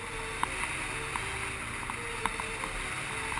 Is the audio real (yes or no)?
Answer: yes